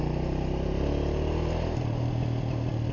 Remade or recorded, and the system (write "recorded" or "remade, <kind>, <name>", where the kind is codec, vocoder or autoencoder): recorded